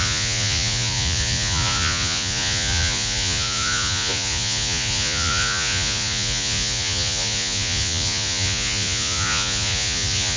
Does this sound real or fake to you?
fake